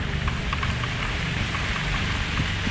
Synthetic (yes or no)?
no